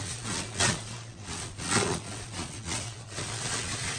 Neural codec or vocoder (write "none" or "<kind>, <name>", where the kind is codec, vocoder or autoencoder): vocoder, Vocos